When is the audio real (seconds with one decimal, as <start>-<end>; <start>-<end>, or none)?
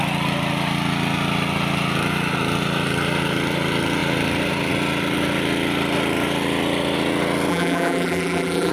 0.0-7.5